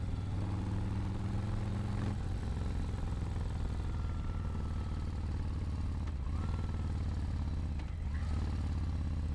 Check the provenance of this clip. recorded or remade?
recorded